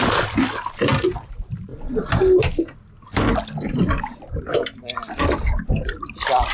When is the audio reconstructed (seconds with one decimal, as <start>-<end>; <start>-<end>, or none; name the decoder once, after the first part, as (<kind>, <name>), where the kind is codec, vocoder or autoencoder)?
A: none